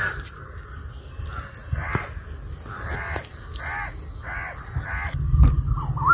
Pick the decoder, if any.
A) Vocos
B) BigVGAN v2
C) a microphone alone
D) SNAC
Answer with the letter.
C